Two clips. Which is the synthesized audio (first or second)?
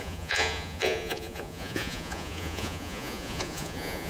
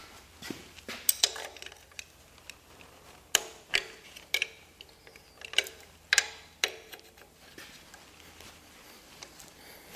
first